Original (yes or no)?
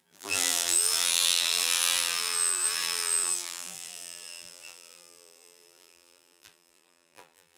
no